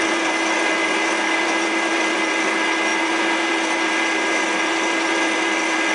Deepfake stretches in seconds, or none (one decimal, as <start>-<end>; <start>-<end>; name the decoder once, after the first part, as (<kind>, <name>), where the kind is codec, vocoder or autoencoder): none